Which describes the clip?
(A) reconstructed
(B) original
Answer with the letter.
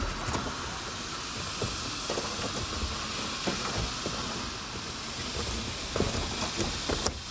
B